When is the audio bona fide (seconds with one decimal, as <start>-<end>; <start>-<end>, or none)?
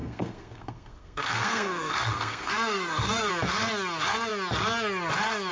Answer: 3.3-5.5